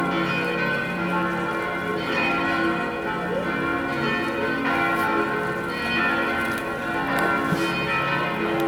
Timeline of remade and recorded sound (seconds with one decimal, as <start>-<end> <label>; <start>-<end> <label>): 0.0-1.9 recorded; 1.9-2.4 remade; 2.4-8.7 recorded